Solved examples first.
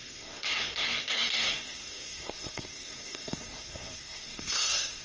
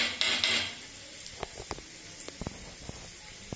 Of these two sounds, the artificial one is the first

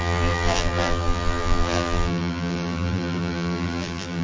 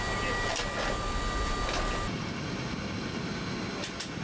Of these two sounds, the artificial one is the first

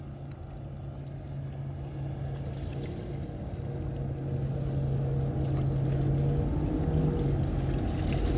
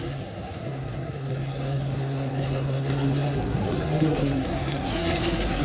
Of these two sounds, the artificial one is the second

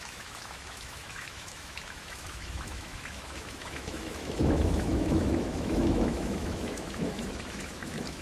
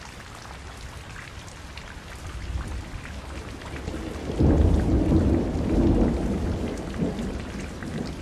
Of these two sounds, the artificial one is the first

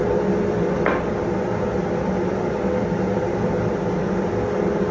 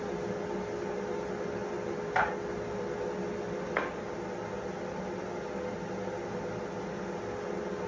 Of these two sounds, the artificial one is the first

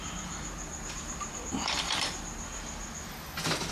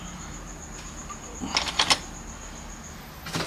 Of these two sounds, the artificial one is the first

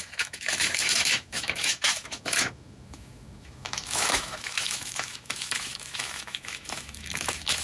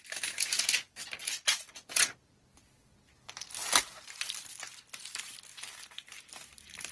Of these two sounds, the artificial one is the first